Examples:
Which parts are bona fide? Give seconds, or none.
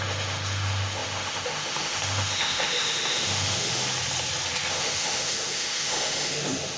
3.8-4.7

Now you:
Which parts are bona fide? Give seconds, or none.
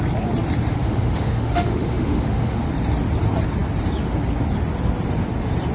0.0-0.7; 2.6-5.7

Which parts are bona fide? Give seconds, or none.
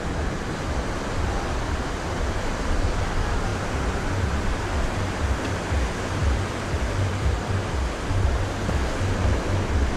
0.0-10.0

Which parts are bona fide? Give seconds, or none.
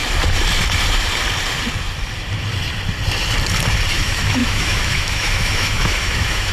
0.0-3.9